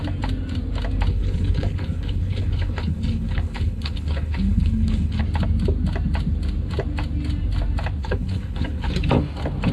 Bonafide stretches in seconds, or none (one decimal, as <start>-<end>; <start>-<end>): 0.0-1.1; 5.2-8.0; 8.9-9.7